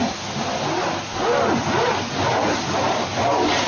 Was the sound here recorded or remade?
recorded